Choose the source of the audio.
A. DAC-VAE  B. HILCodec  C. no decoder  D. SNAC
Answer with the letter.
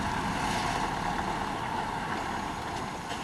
C